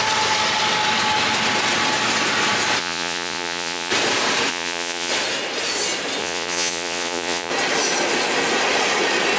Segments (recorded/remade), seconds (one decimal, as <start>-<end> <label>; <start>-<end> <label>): 0.0-2.8 recorded; 2.8-3.9 remade; 3.9-4.5 recorded; 4.5-5.1 remade; 5.1-6.2 recorded; 6.2-7.5 remade; 7.5-9.4 recorded